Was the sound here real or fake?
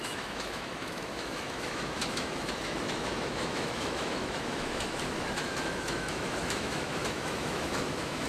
fake